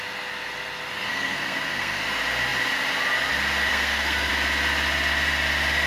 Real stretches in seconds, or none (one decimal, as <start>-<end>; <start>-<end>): 0.0-1.1; 2.0-3.7; 4.3-5.9